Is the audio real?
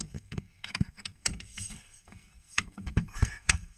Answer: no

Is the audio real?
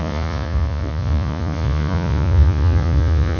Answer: no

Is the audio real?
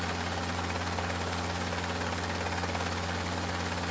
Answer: yes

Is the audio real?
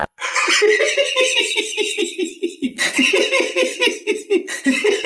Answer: no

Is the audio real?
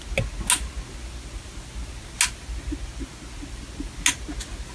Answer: yes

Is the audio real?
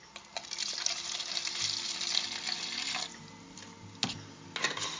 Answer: yes